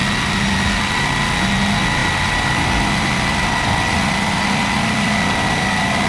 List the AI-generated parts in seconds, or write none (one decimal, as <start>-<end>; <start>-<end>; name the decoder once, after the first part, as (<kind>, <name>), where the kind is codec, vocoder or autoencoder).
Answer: 2.0-6.1 (vocoder, BigVGAN v2)